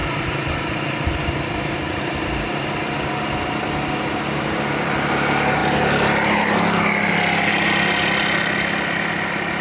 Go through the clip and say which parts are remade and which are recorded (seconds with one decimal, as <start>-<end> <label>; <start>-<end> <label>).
0.0-5.6 recorded; 5.6-9.1 remade; 9.1-9.6 recorded